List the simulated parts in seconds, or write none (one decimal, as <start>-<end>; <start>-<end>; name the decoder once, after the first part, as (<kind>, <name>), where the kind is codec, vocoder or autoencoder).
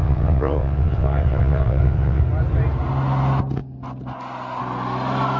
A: 0.0-2.2 (vocoder, WaveNeXt)